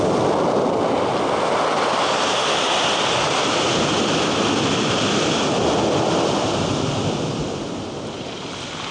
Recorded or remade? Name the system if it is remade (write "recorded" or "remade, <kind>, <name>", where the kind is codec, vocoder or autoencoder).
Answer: recorded